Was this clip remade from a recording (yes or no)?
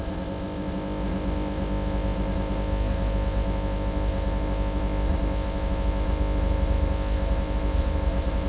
yes